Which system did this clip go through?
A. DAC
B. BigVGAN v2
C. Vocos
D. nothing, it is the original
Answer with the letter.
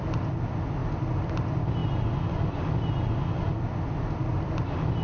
D